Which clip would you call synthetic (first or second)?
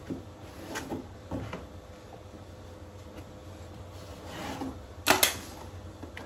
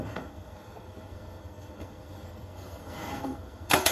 second